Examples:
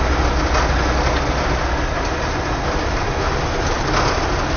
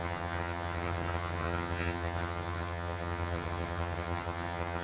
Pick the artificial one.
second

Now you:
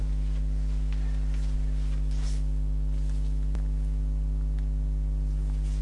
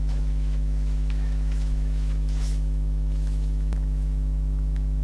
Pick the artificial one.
second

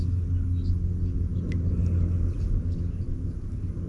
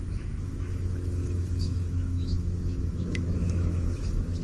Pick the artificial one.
second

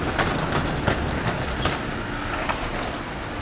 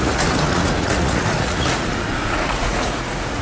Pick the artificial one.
second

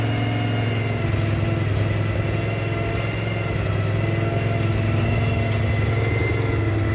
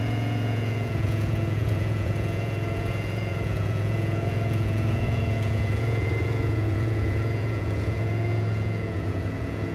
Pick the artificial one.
second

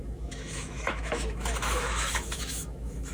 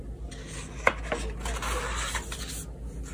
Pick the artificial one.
first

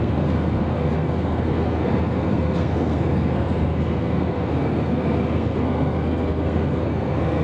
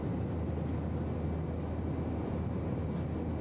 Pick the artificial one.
first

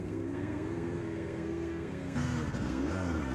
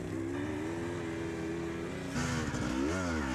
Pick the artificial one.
first